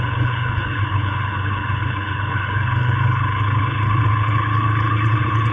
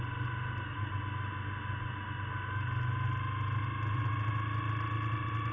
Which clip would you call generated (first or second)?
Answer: first